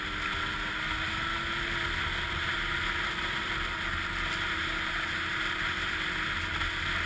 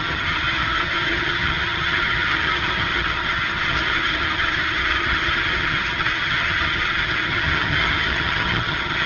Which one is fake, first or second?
second